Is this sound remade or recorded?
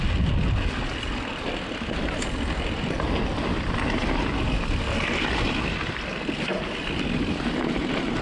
recorded